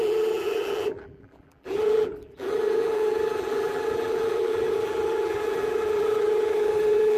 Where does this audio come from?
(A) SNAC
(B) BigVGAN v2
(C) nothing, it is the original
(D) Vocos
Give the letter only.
B